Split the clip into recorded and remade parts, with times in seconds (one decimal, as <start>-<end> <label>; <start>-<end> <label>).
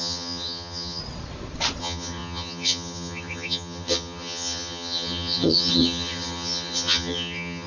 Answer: 0.0-1.0 remade; 1.0-1.8 recorded; 1.8-7.7 remade